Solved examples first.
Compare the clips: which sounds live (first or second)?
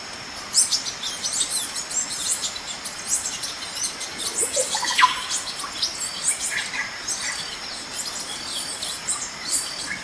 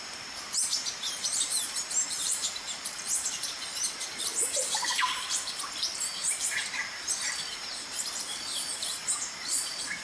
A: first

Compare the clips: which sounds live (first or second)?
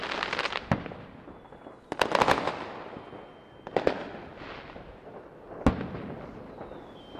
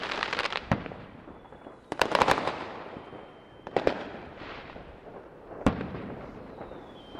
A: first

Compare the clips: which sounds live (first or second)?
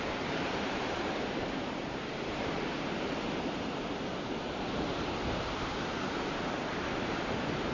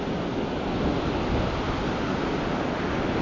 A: second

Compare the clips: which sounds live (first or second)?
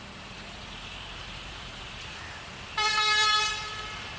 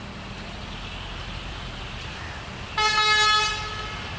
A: second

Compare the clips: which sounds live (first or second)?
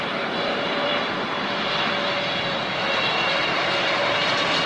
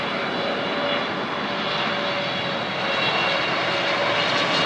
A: second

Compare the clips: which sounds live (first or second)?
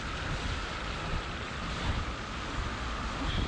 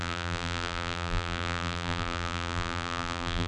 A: first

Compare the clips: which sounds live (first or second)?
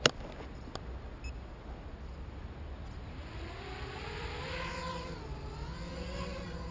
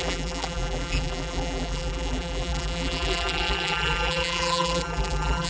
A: first